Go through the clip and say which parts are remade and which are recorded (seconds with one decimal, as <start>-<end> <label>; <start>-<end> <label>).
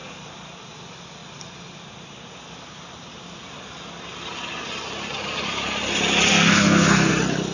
0.0-6.3 recorded; 6.3-7.1 remade; 7.1-7.5 recorded